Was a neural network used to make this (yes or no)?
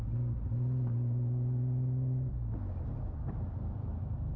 no